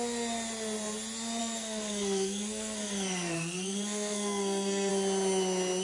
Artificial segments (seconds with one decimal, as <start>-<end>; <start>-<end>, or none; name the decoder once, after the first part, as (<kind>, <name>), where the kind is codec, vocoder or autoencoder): 1.4-4.9 (codec, SNAC)